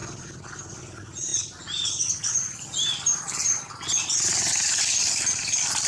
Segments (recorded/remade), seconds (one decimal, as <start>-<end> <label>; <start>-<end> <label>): 0.0-0.7 recorded; 0.7-5.9 remade